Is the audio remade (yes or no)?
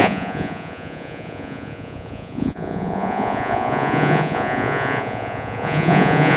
yes